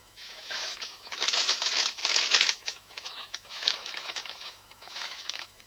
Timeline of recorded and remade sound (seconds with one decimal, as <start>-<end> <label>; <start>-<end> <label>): 0.0-5.7 remade